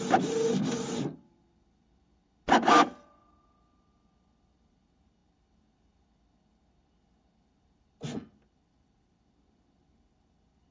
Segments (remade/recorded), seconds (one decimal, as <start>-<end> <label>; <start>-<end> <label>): 0.0-10.7 recorded